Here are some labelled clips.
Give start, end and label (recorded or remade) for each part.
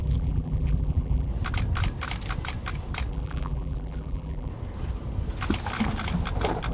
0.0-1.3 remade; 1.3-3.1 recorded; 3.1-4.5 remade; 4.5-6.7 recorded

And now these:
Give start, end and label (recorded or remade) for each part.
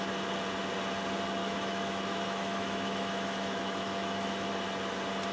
0.0-1.4 recorded; 1.4-4.5 remade; 4.5-5.3 recorded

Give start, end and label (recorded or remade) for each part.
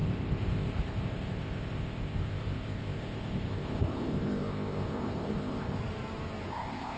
0.0-5.8 remade; 5.8-6.5 recorded; 6.5-7.0 remade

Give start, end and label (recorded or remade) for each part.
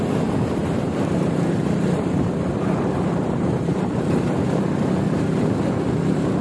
0.0-0.6 recorded; 0.6-4.0 remade; 4.0-6.4 recorded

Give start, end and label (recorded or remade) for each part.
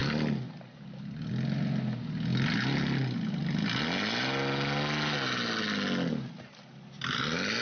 0.0-7.6 recorded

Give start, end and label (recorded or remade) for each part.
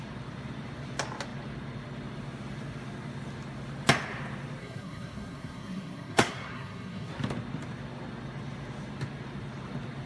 0.0-4.6 recorded; 4.6-7.1 remade; 7.1-10.1 recorded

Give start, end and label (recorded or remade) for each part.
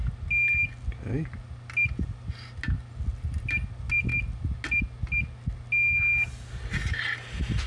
0.0-7.7 recorded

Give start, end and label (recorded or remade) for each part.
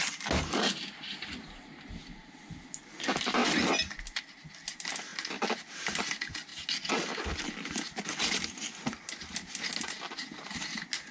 0.0-11.1 recorded